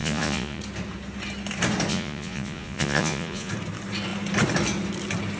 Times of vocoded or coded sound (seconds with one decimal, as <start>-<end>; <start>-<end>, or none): 0.0-0.6; 1.9-3.5

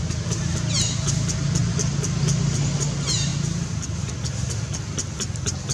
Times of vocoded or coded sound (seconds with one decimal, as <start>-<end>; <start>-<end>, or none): none